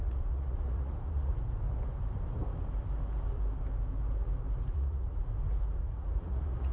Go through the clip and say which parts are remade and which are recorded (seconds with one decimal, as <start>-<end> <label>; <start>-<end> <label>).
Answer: 0.0-1.3 remade; 1.3-4.7 recorded; 4.7-5.2 remade; 5.2-5.8 recorded; 5.8-6.7 remade